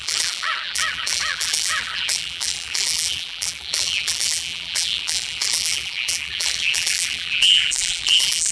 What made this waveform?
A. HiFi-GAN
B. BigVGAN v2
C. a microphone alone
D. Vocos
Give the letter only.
B